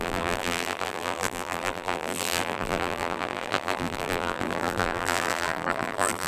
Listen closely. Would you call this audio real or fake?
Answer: fake